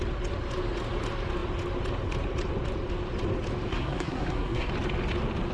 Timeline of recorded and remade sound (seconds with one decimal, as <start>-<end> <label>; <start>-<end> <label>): 0.0-3.7 recorded; 3.7-4.7 remade; 4.7-5.5 recorded